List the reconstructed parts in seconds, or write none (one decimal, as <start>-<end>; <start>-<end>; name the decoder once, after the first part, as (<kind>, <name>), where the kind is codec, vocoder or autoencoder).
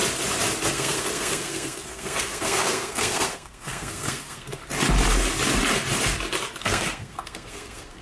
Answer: 0.7-4.6 (codec, SNAC); 6.6-8.0